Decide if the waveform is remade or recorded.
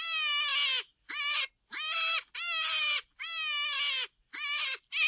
recorded